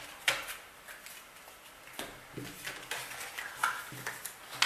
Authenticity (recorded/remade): recorded